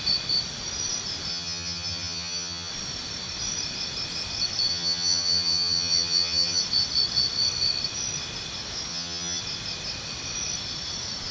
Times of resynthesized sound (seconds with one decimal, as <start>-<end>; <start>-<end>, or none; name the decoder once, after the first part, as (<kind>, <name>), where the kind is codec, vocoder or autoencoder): 1.3-2.7 (vocoder, HiFi-GAN); 4.7-6.6; 8.9-9.4